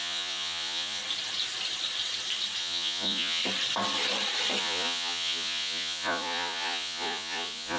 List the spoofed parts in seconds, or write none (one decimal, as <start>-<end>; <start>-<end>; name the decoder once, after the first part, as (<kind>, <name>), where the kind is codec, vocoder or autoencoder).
0.0-1.0 (vocoder, Vocos); 2.6-3.4; 4.6-7.8